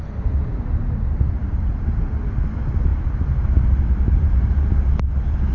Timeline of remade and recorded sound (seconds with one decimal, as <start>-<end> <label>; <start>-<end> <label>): 0.0-2.9 recorded; 2.9-4.7 remade; 4.7-5.5 recorded